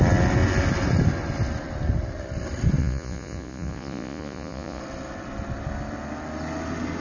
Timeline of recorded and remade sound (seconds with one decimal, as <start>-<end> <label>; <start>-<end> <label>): 0.0-2.8 recorded; 2.8-4.8 remade; 4.8-7.0 recorded